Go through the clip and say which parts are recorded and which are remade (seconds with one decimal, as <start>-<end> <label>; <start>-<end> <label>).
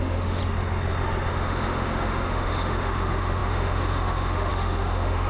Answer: 0.0-0.4 remade; 0.4-1.3 recorded; 1.3-5.3 remade